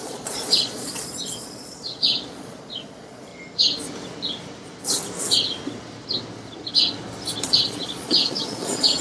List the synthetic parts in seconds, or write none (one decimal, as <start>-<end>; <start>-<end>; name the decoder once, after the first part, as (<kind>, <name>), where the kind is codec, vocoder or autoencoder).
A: 0.0-3.3 (vocoder, Vocos); 7.5-9.0